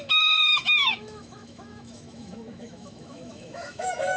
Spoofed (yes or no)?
yes